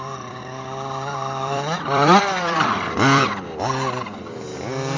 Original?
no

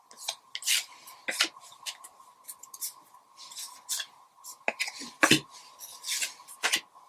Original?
yes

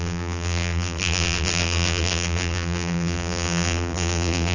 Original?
no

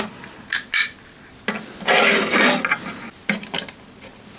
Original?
yes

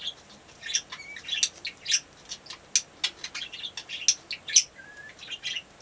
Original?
yes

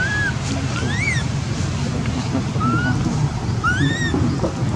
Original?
yes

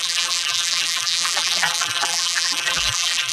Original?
no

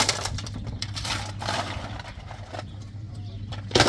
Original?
no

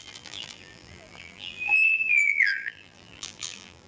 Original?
no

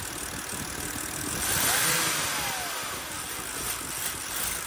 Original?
yes